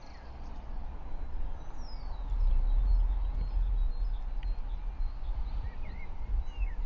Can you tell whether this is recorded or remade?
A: recorded